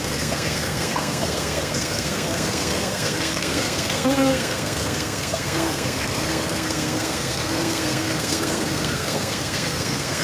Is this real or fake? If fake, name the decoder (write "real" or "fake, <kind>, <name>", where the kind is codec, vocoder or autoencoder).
fake, codec, SNAC